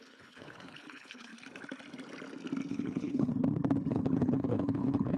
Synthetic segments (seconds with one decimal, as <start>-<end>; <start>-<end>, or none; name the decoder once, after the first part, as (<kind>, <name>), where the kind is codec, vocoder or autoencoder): 0.0-1.3 (codec, HILCodec); 2.7-3.3; 3.9-5.2